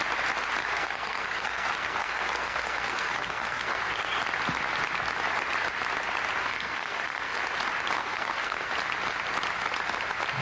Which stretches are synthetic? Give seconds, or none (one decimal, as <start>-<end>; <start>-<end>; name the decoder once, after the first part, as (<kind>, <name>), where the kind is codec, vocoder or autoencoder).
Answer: 0.6-4.2 (codec, SNAC); 6.4-7.4; 8.0-8.7